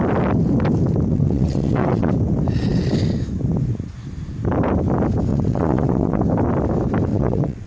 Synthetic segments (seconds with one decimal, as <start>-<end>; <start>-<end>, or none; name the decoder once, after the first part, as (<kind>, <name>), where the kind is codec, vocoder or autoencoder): 1.1-2.1 (vocoder, WaveNeXt); 5.3-6.2; 7.1-7.7